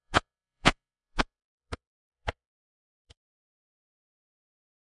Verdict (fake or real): fake